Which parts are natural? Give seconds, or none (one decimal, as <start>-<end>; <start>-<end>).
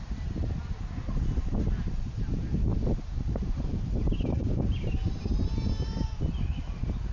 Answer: 0.0-2.7; 5.1-7.1